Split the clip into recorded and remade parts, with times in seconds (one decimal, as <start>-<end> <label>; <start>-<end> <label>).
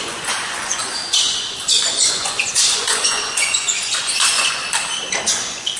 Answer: 0.0-4.6 remade; 4.6-5.2 recorded; 5.2-5.8 remade